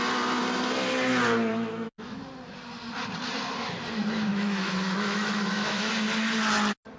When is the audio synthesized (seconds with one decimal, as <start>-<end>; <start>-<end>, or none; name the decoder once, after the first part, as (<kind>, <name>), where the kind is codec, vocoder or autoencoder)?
1.5-2.2 (autoencoder, DAC-VAE); 4.3-5.9